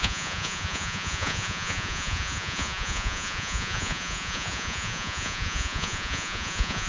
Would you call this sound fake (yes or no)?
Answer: yes